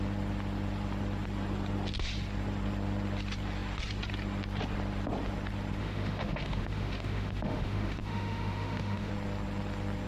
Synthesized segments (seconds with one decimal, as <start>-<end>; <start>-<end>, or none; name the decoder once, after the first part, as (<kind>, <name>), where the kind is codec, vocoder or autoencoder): 5.8-9.1 (autoencoder, DAC-VAE)